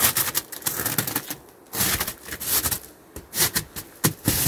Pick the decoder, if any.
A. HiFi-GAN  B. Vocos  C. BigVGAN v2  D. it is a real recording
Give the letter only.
D